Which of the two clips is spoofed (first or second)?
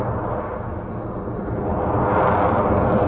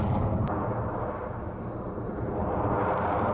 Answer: second